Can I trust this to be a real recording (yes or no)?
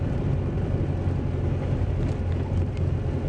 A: yes